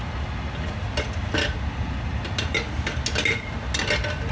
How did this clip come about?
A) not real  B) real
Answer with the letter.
B